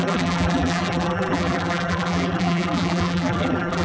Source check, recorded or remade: remade